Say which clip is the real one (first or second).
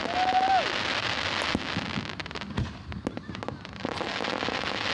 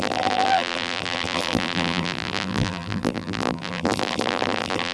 first